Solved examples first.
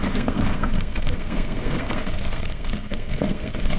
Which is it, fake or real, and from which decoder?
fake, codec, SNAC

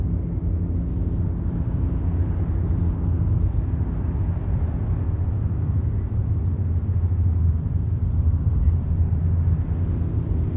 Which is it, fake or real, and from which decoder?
real